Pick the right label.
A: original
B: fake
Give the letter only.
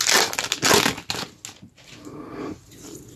A